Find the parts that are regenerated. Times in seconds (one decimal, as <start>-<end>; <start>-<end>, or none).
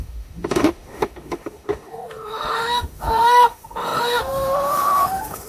0.0-5.5